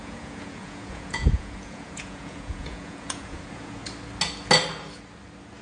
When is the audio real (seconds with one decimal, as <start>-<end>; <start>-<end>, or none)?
3.8-5.6